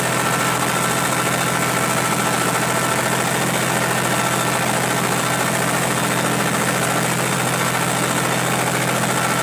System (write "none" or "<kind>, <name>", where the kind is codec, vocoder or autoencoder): none